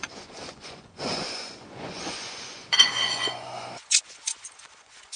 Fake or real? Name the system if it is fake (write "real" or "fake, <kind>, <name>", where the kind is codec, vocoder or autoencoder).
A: fake, vocoder, Vocos